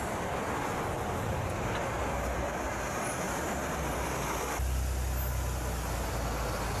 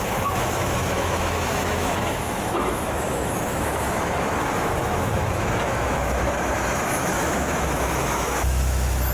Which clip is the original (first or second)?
first